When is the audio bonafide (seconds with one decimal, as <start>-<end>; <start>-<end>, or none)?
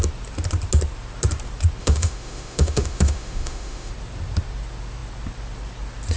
0.0-1.8; 3.9-6.2